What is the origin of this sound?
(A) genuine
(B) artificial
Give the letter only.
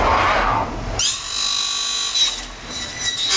A